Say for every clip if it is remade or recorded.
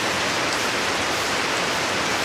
remade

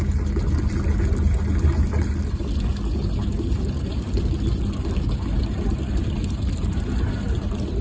recorded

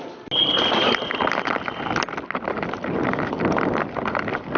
recorded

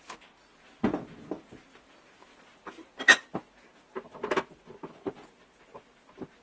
recorded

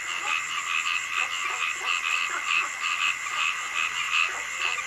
recorded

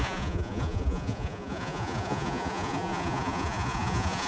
remade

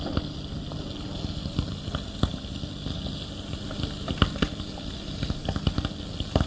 recorded